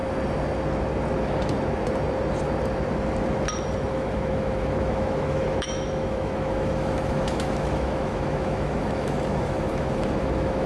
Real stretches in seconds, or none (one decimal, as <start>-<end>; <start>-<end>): 0.0-3.9